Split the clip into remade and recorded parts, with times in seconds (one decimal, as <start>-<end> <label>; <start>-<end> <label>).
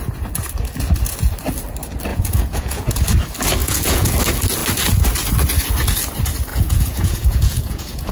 0.0-2.1 recorded; 2.1-3.0 remade; 3.0-3.6 recorded; 3.6-4.1 remade; 4.1-6.5 recorded; 6.5-8.1 remade